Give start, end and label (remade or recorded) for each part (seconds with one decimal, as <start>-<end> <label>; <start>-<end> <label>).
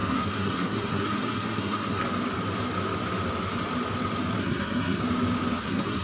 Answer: 0.0-2.0 remade; 2.0-4.4 recorded; 4.4-5.0 remade; 5.0-5.6 recorded; 5.6-6.0 remade